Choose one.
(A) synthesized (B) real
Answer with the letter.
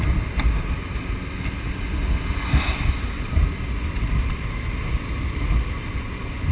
B